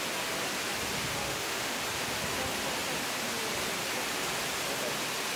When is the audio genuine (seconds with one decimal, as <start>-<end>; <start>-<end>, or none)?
0.0-1.2; 1.8-5.4